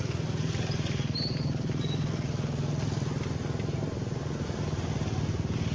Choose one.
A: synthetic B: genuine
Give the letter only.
B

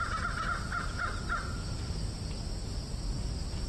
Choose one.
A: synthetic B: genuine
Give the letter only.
B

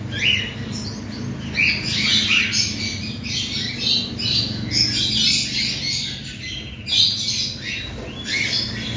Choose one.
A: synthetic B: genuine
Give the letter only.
B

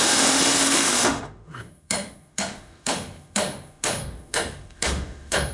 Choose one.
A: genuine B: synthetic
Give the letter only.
B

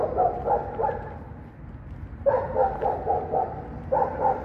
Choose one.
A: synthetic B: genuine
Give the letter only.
B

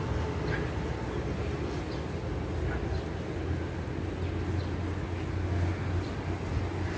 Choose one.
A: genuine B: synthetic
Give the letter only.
A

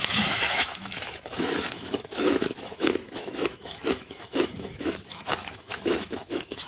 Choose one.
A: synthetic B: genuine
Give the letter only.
A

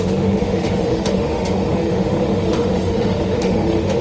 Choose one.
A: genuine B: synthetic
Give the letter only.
B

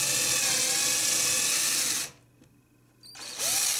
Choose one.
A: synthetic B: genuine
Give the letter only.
B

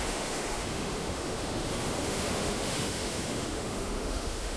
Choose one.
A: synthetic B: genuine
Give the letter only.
A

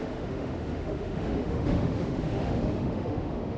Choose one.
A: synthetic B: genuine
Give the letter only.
A